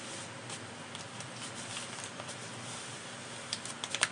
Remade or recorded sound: recorded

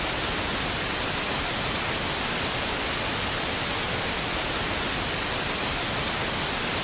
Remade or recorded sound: recorded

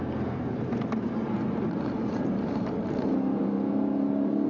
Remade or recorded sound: remade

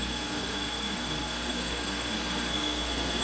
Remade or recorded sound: remade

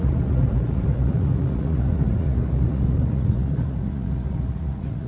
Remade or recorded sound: remade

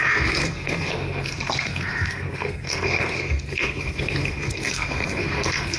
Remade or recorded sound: remade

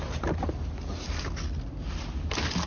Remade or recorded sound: recorded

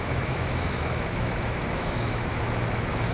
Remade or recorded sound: remade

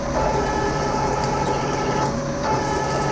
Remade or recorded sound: remade